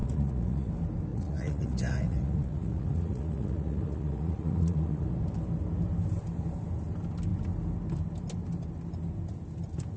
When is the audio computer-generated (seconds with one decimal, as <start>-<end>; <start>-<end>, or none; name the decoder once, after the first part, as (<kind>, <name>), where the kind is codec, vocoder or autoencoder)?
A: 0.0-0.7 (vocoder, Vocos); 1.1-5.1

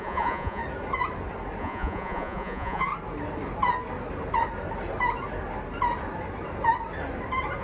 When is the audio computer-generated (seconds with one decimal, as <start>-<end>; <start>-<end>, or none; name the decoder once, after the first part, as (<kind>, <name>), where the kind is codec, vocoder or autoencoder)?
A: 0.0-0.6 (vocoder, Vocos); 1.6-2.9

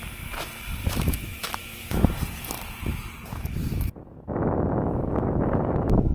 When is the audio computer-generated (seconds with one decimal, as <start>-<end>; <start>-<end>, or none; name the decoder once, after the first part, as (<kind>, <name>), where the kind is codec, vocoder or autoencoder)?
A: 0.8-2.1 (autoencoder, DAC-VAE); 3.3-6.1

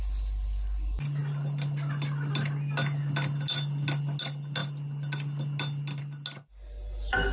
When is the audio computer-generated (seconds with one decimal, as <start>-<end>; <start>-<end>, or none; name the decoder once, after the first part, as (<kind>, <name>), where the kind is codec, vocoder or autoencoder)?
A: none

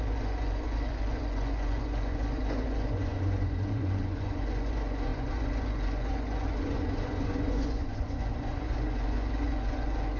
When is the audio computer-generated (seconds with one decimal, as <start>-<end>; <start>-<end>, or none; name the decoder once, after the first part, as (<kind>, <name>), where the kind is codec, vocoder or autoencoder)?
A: 0.0-10.2 (vocoder, Vocos)